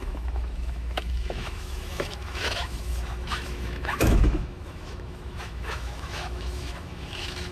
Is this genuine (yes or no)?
no